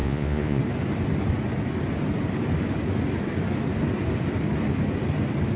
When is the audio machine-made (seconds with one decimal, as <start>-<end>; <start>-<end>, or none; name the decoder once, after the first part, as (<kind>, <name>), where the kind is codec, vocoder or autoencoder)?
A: 0.0-0.6 (vocoder, Vocos)